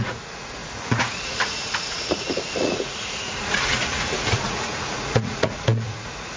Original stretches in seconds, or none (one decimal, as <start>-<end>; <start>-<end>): none